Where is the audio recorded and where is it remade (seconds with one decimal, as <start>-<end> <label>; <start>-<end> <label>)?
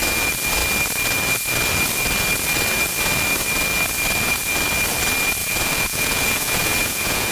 0.0-5.4 recorded; 5.4-7.3 remade